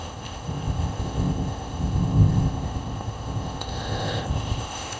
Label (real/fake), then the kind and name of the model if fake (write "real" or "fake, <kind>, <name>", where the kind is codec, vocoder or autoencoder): fake, codec, ZipCodec